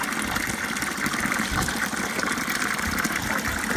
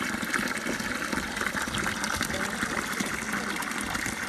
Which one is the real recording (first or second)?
first